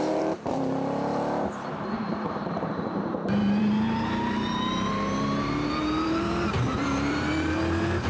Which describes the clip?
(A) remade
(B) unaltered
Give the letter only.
A